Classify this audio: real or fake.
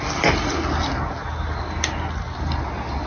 real